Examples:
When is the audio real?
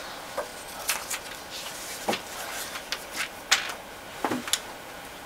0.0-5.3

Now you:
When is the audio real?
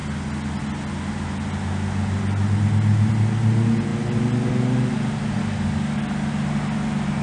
0.0-5.4; 6.0-7.2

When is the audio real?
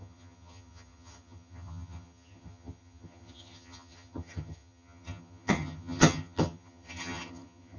none